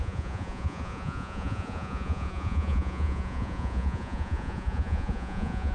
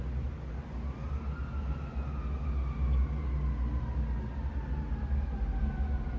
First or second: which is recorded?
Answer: second